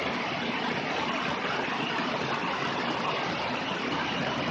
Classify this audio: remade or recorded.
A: recorded